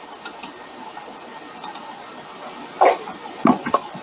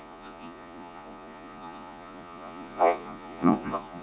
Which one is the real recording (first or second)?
first